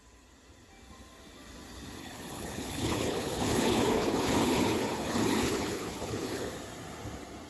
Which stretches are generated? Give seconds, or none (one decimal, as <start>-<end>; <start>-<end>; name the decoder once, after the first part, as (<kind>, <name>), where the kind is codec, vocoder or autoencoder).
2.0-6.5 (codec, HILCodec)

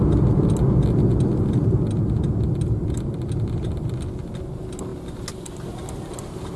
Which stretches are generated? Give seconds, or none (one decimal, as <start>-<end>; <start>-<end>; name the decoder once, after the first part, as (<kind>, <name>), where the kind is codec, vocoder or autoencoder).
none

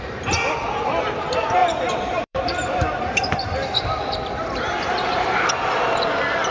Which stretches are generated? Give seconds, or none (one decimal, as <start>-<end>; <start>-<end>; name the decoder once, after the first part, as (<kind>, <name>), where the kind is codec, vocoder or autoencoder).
1.6-5.5 (vocoder, BigVGAN v2)

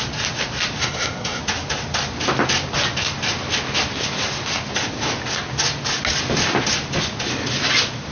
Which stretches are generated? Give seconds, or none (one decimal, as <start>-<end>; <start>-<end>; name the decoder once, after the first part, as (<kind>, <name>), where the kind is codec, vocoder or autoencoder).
0.8-1.4 (codec, SNAC)